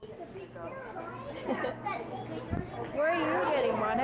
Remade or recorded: recorded